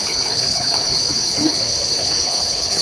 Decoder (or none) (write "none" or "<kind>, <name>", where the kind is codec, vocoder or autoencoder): codec, HILCodec